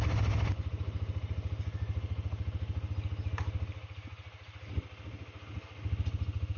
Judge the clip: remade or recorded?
recorded